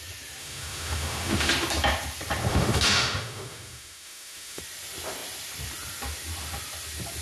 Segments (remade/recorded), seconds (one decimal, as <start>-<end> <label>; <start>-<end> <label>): 0.0-0.4 recorded; 0.4-1.5 remade; 1.5-2.5 recorded; 2.5-4.6 remade; 4.6-7.2 recorded